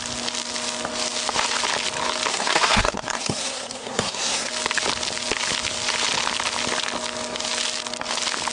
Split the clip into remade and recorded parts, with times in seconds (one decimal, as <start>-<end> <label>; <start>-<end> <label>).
0.0-2.3 recorded; 2.3-4.5 remade; 4.5-8.5 recorded